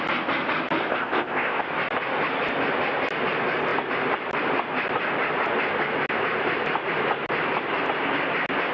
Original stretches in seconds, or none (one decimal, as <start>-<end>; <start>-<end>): 0.0-0.9; 1.6-8.7